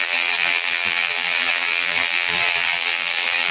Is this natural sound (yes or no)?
no